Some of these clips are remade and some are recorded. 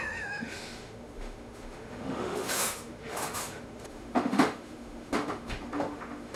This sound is remade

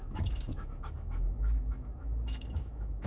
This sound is remade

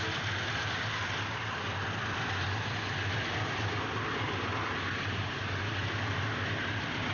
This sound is recorded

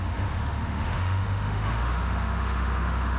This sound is remade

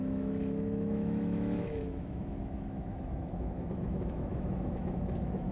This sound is remade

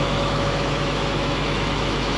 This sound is remade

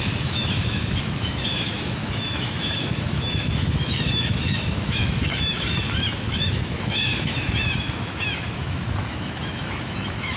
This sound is remade